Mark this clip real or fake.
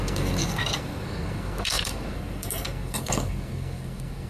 fake